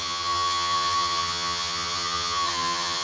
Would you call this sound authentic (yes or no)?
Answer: no